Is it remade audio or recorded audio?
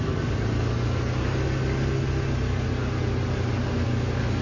recorded